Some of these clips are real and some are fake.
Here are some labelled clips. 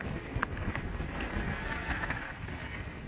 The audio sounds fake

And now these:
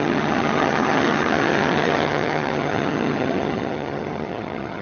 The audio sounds fake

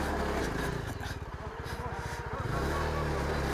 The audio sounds real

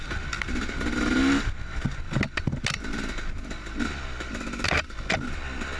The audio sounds real